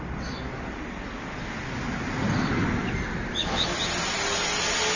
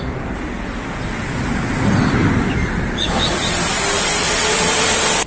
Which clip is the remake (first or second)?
second